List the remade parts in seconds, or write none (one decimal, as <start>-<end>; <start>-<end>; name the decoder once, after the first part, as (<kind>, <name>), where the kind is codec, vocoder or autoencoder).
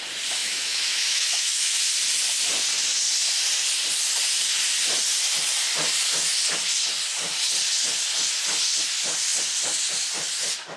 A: 0.4-1.8 (autoencoder, DAC-VAE)